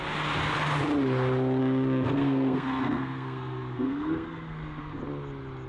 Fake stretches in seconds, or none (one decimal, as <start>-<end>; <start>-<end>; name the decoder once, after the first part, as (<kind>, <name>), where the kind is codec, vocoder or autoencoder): 1.6-5.0 (codec, SNAC)